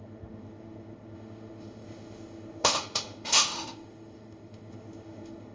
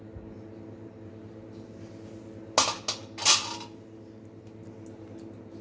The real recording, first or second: second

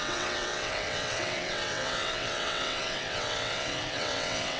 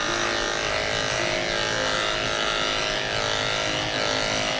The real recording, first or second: second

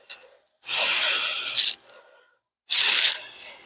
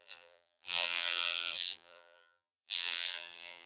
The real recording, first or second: first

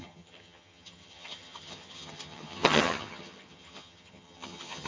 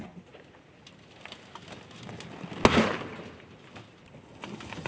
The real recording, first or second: second